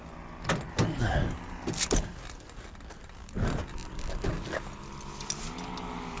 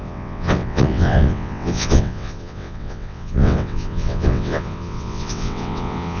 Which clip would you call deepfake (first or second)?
second